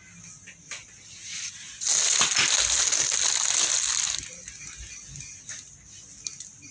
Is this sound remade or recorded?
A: recorded